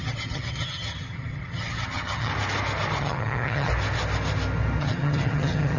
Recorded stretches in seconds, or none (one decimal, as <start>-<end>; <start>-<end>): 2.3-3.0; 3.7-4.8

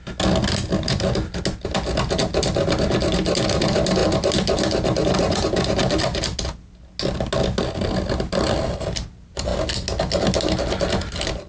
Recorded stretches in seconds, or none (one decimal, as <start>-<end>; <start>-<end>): 0.0-11.5

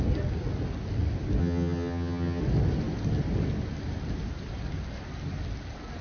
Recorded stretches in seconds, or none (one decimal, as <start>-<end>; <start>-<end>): 0.0-1.4; 2.4-6.0

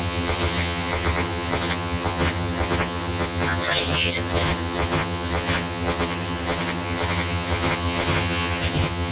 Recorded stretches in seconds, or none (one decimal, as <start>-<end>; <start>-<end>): none